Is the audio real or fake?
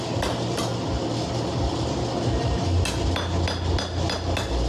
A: real